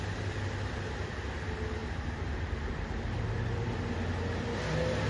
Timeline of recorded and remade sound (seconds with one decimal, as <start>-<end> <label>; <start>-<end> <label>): 0.0-1.8 recorded; 1.8-3.9 remade; 3.9-5.1 recorded